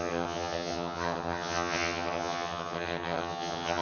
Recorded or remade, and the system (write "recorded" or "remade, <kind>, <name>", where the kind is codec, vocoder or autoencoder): remade, vocoder, HiFi-GAN